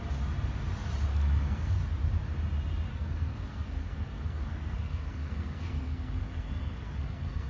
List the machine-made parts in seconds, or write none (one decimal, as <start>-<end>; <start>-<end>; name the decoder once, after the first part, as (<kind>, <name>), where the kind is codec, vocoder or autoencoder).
1.1-1.8 (codec, SNAC); 2.9-7.5